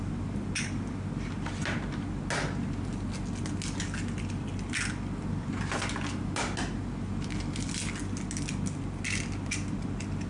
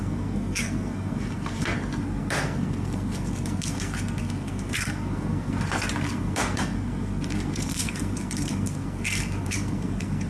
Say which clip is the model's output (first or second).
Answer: second